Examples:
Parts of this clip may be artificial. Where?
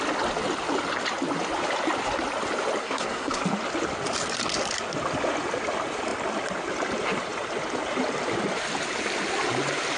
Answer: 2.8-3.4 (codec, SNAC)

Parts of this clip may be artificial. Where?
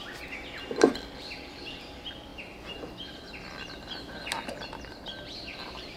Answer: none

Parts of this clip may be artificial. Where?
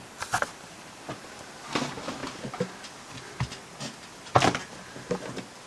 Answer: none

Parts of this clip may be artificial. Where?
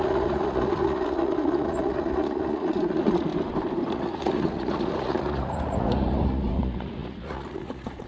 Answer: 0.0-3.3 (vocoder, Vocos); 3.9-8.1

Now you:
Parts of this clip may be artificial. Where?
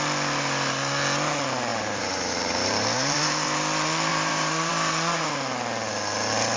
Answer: 1.7-3.6 (vocoder, BigVGAN v2); 4.1-4.7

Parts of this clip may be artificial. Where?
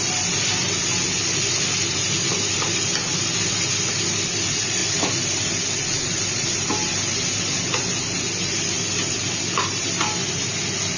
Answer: none